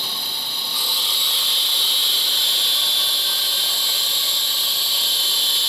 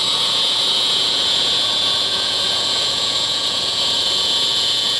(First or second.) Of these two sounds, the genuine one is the first